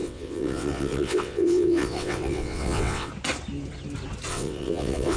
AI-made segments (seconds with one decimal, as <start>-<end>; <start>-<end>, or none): 0.0-3.1; 4.3-5.2